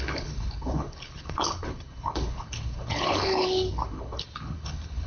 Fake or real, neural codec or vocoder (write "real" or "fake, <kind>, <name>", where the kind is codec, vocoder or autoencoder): fake, codec, HILCodec